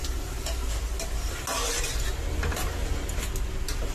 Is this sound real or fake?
real